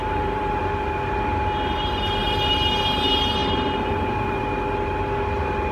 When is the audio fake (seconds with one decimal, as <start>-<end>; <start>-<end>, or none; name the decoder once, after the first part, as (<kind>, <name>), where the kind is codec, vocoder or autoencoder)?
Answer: 0.0-0.6 (vocoder, BigVGAN v2); 2.2-3.0; 3.4-4.4